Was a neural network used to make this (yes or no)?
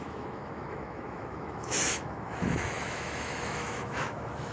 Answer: yes